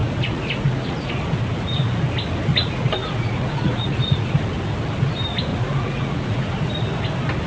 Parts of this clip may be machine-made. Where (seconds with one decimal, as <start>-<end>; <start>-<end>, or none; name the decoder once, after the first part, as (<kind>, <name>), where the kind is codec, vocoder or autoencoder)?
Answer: 0.0-1.1 (vocoder, Vocos); 2.5-4.4; 5.5-6.7